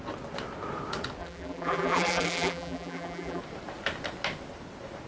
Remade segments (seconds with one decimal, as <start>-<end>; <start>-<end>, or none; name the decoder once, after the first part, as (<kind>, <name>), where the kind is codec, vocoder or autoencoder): 1.2-3.4 (vocoder, BigVGAN v2)